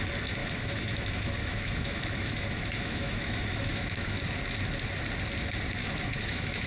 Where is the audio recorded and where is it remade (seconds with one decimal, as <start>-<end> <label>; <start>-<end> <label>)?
0.0-0.4 recorded; 0.4-4.2 remade; 4.2-5.8 recorded; 5.8-6.7 remade